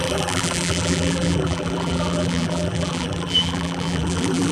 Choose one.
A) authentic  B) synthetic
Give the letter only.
B